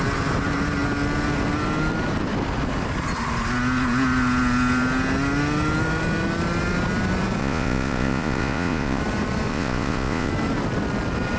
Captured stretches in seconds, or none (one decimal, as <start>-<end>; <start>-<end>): 0.0-7.4; 9.0-9.5; 10.3-11.4